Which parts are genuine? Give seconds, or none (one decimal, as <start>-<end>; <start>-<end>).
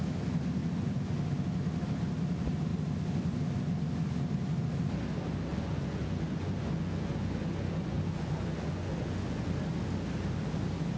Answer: 0.0-0.6; 1.2-5.5; 9.5-11.0